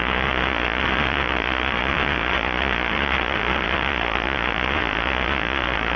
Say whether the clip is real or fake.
fake